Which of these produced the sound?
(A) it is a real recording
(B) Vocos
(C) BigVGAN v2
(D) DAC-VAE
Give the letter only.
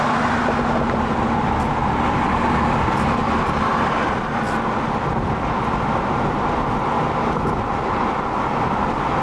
A